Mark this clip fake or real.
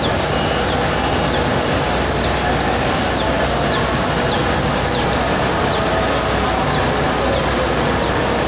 real